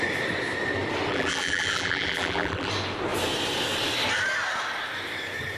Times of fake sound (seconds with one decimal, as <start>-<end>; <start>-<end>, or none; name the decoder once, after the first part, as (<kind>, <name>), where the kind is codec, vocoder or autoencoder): 1.1-2.7 (vocoder, BigVGAN v2)